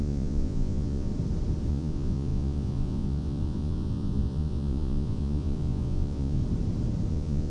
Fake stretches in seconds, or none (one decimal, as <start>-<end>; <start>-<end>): 0.0-1.1; 1.7-6.4; 7.1-7.5